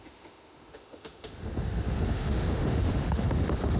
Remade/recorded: remade